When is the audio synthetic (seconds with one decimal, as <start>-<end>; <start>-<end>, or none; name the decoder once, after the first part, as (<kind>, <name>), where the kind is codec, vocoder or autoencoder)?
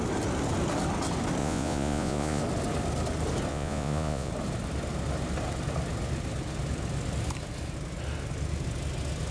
1.4-2.4 (vocoder, Vocos); 3.5-4.3